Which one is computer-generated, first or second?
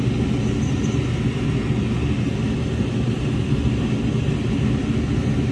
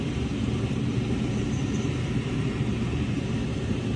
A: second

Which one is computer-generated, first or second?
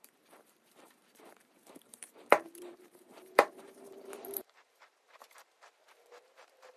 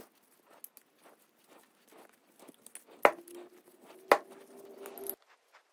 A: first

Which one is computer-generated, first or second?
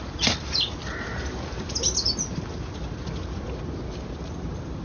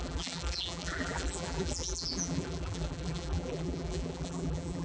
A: second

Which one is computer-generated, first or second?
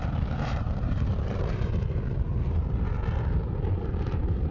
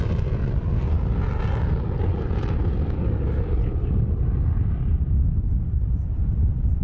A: first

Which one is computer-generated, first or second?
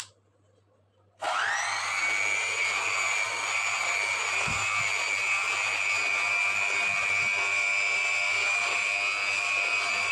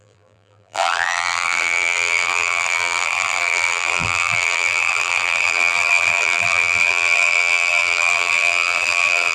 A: second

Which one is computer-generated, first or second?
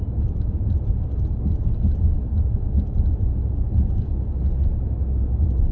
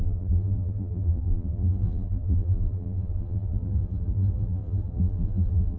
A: second